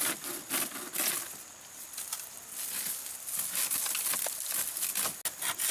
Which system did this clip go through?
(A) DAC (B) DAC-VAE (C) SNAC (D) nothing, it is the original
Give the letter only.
D